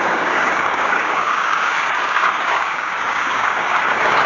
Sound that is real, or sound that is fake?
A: fake